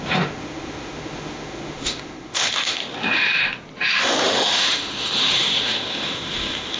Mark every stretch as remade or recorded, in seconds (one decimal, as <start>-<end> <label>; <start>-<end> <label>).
0.0-2.8 remade; 2.8-4.0 recorded; 4.0-6.8 remade